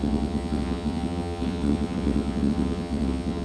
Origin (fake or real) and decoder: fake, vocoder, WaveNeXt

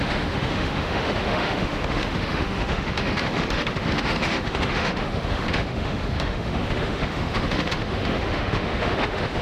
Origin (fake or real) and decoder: fake, autoencoder, DAC-VAE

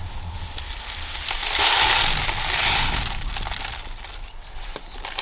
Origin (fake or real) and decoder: real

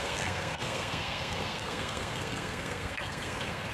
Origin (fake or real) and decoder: fake, codec, SNAC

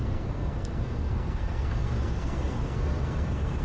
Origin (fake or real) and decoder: fake, codec, SNAC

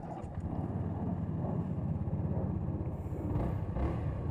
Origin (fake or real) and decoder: real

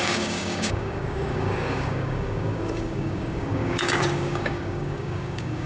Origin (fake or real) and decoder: fake, codec, DAC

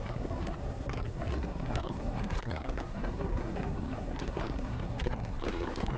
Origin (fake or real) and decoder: fake, codec, SNAC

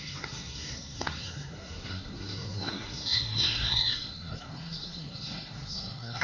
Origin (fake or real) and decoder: fake, codec, SNAC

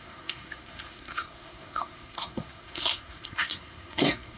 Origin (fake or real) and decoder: fake, codec, SNAC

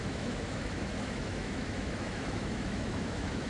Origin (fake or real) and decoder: fake, autoencoder, DAC-VAE